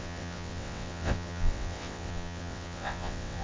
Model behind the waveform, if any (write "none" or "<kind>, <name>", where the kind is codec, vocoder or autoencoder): vocoder, WaveNeXt